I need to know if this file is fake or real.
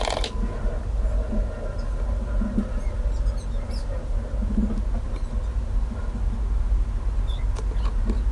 real